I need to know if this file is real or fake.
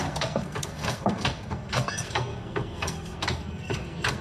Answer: fake